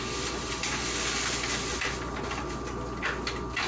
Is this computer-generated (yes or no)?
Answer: no